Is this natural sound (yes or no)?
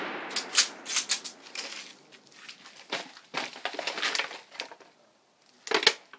yes